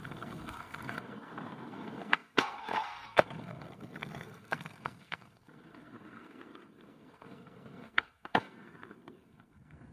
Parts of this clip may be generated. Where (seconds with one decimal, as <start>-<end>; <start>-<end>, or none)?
0.0-9.9